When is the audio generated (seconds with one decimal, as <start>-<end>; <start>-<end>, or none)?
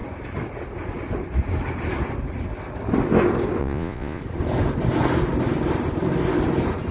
3.6-4.2